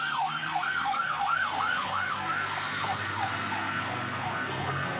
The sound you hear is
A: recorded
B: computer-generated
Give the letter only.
B